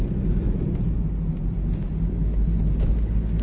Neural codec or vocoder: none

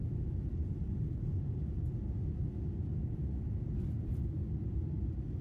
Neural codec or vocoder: none